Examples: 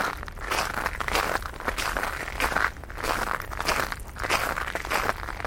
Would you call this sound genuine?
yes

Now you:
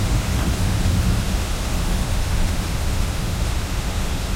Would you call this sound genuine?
no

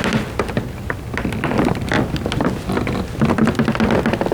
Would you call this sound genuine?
yes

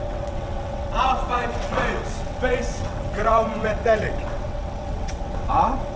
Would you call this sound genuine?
no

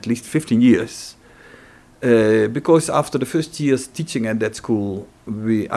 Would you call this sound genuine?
no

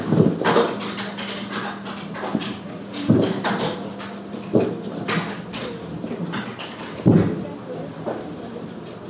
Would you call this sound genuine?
yes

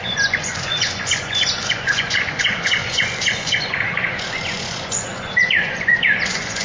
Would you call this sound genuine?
no